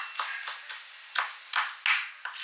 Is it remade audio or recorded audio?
recorded